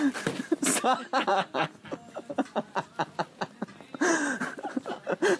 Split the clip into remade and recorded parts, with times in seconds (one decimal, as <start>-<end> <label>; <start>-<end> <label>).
0.0-5.4 recorded